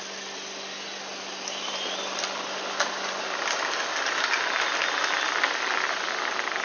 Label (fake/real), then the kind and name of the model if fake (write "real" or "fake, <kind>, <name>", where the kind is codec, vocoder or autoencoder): real